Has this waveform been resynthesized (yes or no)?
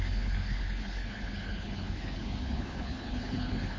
yes